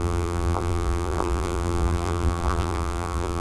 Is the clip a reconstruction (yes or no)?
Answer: yes